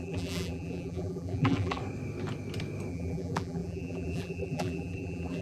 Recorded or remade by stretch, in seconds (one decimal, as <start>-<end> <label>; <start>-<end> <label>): 0.0-1.8 remade; 1.8-2.9 recorded; 2.9-5.4 remade